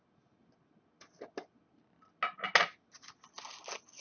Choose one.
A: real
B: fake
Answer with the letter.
A